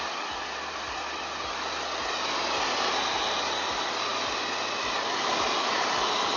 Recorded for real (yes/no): yes